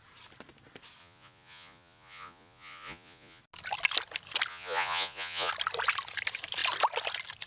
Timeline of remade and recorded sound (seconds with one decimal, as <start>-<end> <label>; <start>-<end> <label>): 0.0-1.0 recorded; 1.0-3.4 remade; 3.4-4.5 recorded; 4.5-5.5 remade; 5.5-7.5 recorded